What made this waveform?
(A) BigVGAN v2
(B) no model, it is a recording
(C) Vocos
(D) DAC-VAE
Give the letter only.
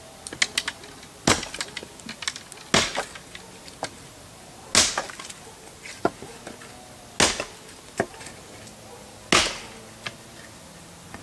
B